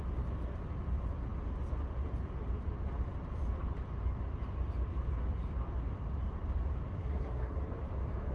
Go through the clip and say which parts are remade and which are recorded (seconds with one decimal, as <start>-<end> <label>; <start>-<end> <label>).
0.0-7.0 recorded; 7.0-7.6 remade; 7.6-8.3 recorded